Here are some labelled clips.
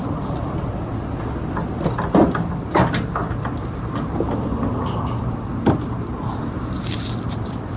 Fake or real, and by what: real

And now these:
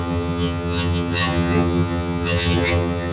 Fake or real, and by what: fake, vocoder, HiFi-GAN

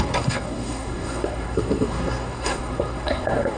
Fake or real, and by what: fake, codec, SNAC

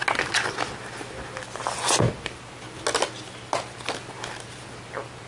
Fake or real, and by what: real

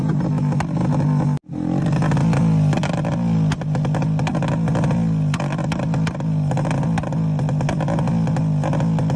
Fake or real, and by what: real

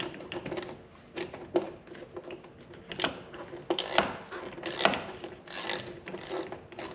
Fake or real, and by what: real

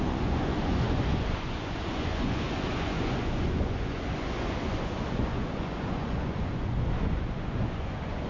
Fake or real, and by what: fake, vocoder, Vocos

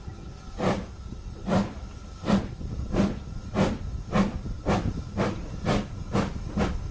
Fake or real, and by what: real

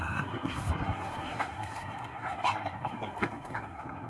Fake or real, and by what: fake, codec, SNAC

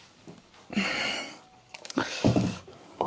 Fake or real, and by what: fake, codec, DAC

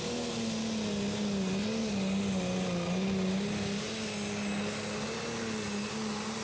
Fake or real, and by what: real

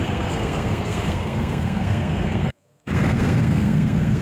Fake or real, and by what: fake, codec, SNAC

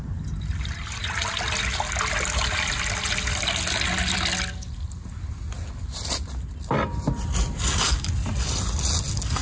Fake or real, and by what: real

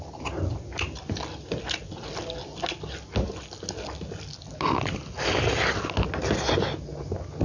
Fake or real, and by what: real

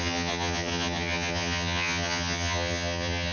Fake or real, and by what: fake, vocoder, HiFi-GAN